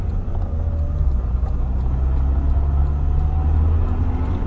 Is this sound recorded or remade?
recorded